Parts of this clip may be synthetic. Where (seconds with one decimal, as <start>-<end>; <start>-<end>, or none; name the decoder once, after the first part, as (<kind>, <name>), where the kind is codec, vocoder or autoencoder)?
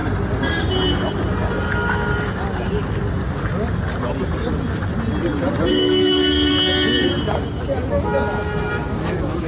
5.7-6.5 (codec, SNAC)